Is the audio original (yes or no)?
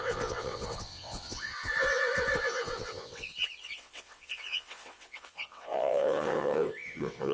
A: no